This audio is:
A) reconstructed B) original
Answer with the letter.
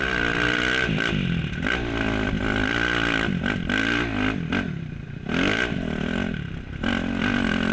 B